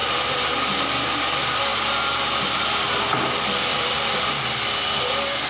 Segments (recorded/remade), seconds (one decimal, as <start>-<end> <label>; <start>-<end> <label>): 0.0-0.5 remade; 0.5-3.7 recorded; 3.7-4.4 remade; 4.4-5.5 recorded